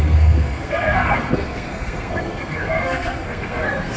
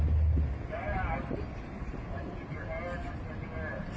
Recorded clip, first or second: second